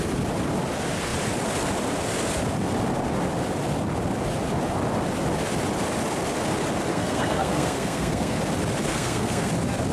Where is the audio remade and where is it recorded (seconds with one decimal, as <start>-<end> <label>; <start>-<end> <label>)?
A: 0.0-6.9 recorded; 6.9-8.4 remade; 8.4-8.9 recorded; 8.9-9.5 remade; 9.5-9.9 recorded